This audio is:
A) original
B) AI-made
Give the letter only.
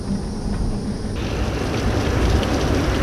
A